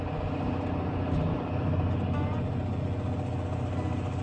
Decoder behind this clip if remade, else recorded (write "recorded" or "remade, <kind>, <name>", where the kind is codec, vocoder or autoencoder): recorded